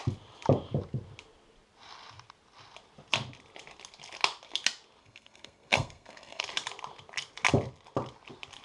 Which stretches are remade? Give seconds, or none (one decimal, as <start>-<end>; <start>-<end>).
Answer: 5.0-6.4